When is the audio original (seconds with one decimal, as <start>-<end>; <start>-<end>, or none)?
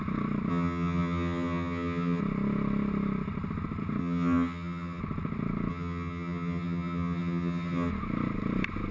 0.0-0.5; 2.2-4.0; 5.0-5.7; 7.9-8.9